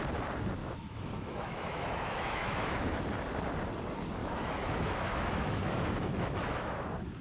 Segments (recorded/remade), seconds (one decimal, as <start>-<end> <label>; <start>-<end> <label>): 0.0-0.6 recorded; 0.6-3.0 remade; 3.0-4.2 recorded; 4.2-6.8 remade; 6.8-7.2 recorded